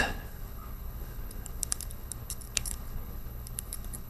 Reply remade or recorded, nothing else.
remade